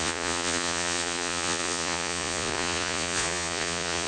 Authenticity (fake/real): fake